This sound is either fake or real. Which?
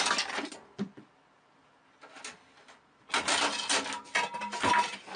real